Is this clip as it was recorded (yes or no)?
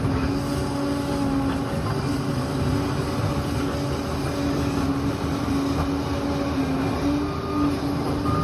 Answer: yes